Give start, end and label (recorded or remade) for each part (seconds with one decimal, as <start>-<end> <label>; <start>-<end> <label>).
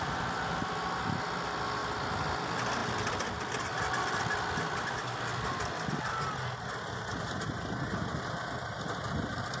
0.0-9.6 recorded